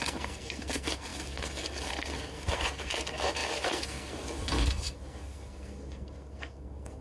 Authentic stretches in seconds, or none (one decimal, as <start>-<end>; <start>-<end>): none